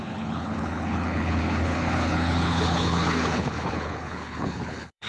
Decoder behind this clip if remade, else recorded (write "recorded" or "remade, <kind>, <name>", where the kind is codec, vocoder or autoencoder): remade, codec, HILCodec